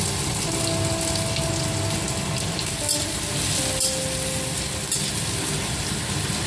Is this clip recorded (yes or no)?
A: yes